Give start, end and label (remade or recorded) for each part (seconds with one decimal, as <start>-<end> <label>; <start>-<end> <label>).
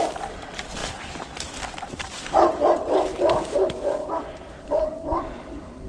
0.0-0.8 recorded; 0.8-2.1 remade; 2.1-4.0 recorded; 4.0-5.9 remade